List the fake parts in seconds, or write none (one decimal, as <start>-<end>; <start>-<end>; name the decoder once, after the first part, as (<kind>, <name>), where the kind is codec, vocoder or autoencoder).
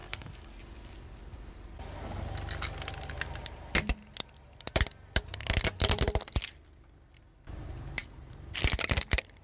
0.0-0.6 (codec, DAC)